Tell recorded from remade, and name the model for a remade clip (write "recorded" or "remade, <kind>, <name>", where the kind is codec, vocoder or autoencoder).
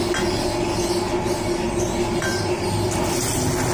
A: recorded